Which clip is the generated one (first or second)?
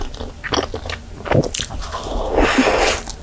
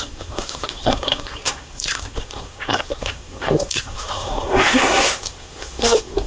second